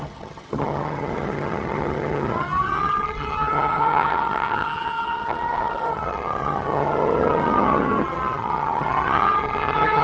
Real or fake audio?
fake